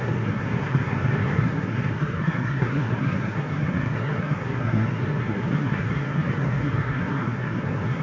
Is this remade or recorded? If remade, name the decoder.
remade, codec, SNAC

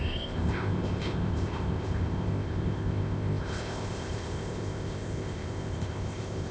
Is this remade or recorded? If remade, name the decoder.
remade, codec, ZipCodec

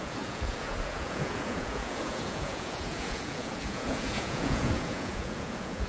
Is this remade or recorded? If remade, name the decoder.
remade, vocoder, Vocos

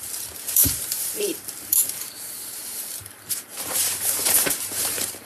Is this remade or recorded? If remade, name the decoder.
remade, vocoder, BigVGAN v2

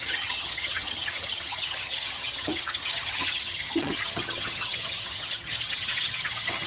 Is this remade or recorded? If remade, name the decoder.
remade, vocoder, HiFi-GAN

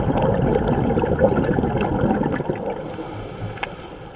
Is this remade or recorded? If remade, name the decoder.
recorded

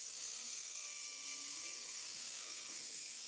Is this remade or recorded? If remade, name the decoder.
remade, codec, SNAC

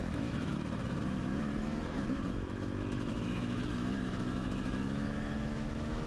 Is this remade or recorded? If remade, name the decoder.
remade, autoencoder, DAC-VAE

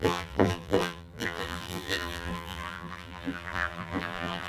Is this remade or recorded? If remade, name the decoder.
remade, vocoder, BigVGAN v2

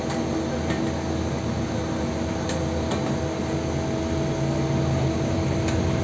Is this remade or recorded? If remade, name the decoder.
recorded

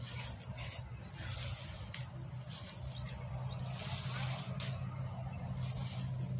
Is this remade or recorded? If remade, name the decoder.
recorded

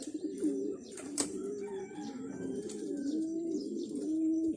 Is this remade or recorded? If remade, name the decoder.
remade, vocoder, BigVGAN v2